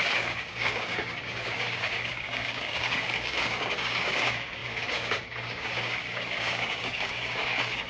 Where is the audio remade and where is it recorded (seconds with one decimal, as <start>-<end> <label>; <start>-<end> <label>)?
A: 0.0-7.9 remade